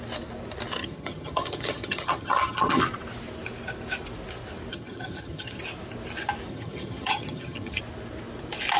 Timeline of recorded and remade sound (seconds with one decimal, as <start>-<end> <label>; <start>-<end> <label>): 0.0-0.8 recorded; 0.8-2.8 remade; 2.8-4.7 recorded; 4.7-5.6 remade; 5.6-6.5 recorded; 6.5-7.8 remade; 7.8-8.8 recorded

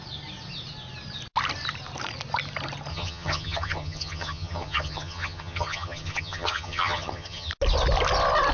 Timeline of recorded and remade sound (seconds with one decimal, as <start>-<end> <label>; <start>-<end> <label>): 0.0-2.9 recorded; 2.9-7.5 remade; 7.5-8.5 recorded

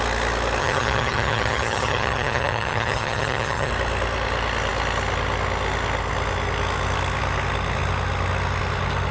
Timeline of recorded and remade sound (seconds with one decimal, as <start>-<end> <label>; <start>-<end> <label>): 0.0-0.6 recorded; 0.6-3.7 remade; 3.7-9.1 recorded

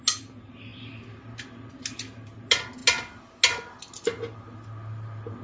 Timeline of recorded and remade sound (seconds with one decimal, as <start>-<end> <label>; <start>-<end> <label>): 0.0-5.4 recorded

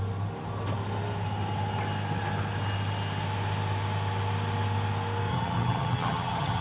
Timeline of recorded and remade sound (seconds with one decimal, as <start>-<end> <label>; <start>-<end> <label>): 0.0-5.3 recorded; 5.3-6.6 remade

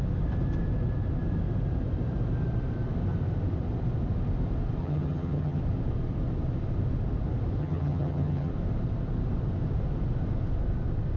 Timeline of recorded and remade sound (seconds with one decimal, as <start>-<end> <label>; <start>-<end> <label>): 0.0-4.8 recorded; 4.8-5.6 remade; 5.6-7.6 recorded; 7.6-8.5 remade; 8.5-11.2 recorded

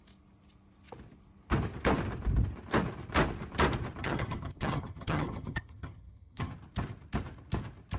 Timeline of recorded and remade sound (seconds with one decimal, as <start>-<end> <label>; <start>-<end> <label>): 0.0-4.0 recorded; 4.0-6.5 remade; 6.5-8.0 recorded